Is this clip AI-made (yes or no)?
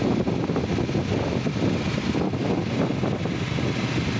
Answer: no